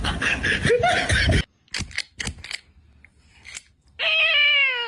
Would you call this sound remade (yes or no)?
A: no